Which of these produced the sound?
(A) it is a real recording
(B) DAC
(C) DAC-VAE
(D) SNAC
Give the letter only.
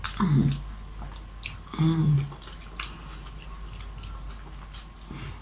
A